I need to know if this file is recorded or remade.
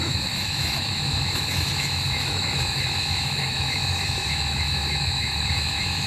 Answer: remade